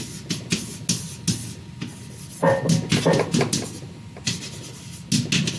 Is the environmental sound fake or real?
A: real